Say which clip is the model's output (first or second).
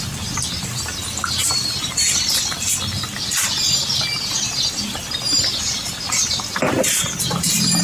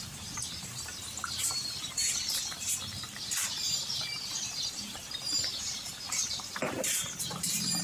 second